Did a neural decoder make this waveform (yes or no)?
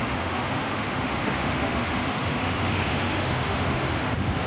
yes